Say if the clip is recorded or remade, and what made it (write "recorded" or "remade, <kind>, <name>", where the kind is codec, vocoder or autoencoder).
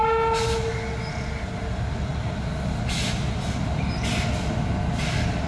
recorded